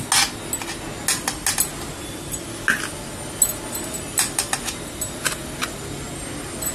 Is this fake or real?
real